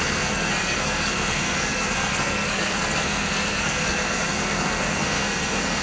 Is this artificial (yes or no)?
yes